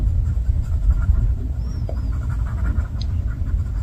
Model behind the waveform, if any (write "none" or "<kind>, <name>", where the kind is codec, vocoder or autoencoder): none